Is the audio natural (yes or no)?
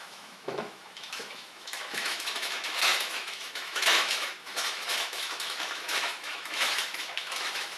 no